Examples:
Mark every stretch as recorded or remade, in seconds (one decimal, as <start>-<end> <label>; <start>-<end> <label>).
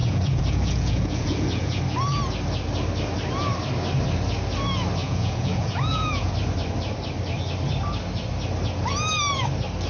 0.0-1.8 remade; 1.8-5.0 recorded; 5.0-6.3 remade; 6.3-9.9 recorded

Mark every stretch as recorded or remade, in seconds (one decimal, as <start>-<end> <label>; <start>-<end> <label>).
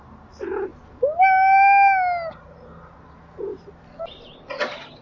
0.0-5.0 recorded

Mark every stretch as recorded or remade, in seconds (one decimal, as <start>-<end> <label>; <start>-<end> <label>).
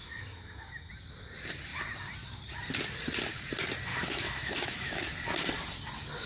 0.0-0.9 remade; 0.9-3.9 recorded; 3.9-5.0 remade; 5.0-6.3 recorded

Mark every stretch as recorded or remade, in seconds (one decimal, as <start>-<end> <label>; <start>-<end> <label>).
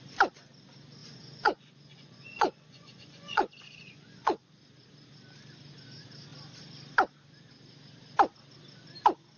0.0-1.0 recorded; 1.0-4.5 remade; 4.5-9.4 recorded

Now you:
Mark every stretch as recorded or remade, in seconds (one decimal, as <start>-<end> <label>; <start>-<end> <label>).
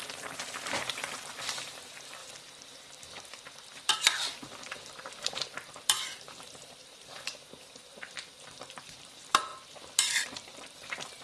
0.0-11.2 remade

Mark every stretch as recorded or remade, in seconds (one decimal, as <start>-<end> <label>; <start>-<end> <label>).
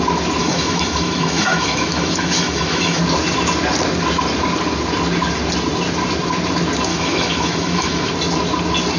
0.0-0.4 recorded; 0.4-3.0 remade; 3.0-6.9 recorded; 6.9-8.1 remade; 8.1-9.0 recorded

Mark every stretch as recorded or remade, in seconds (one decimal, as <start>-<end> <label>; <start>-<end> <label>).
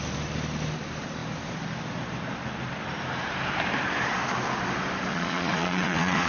0.0-5.1 recorded; 5.1-6.3 remade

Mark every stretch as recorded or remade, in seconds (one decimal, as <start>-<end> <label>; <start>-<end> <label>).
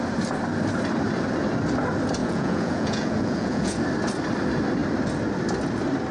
0.0-2.2 recorded; 2.2-3.8 remade; 3.8-6.1 recorded